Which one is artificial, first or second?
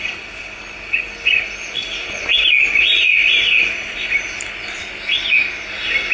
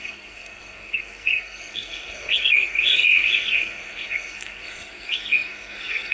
second